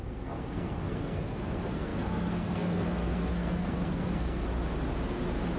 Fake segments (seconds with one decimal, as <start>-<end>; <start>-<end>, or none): 0.0-4.5